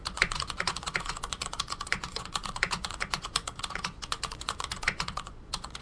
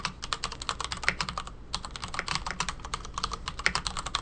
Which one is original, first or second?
second